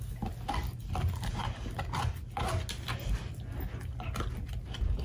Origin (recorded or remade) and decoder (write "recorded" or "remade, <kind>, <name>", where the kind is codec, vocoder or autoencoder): recorded